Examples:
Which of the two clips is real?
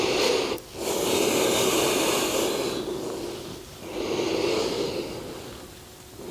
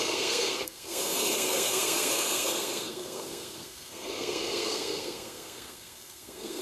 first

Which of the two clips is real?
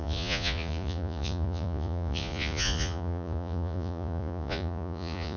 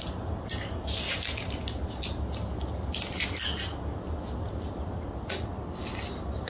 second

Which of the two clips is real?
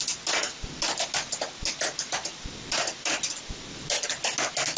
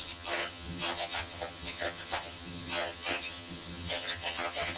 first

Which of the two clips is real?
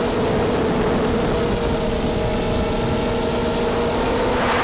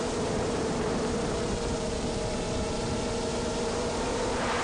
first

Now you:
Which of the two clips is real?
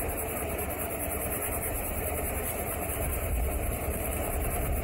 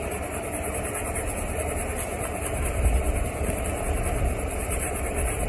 second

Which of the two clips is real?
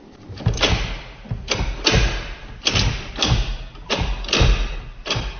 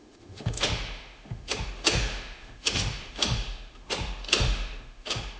first